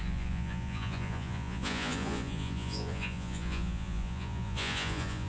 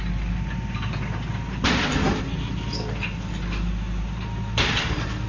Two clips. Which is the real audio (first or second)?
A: second